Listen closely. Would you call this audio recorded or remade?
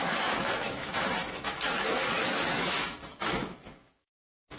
remade